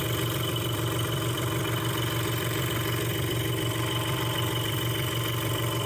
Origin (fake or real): fake